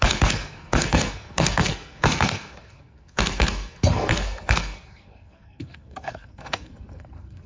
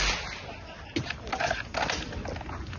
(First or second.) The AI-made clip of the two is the first